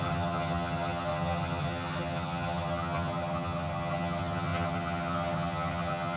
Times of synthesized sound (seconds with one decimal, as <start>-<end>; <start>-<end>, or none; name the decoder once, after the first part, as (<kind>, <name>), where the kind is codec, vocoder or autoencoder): 0.0-6.2 (vocoder, HiFi-GAN)